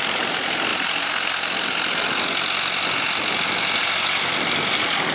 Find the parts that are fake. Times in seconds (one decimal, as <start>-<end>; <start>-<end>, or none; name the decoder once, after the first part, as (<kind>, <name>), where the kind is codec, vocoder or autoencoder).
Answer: none